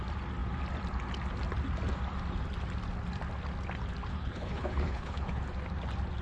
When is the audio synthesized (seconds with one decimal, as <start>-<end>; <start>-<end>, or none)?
4.1-5.4